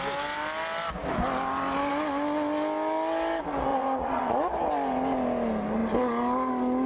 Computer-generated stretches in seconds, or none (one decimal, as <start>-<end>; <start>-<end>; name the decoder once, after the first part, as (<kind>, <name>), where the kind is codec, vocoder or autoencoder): 3.7-4.3 (vocoder, Vocos)